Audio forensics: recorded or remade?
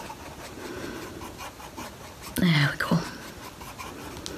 recorded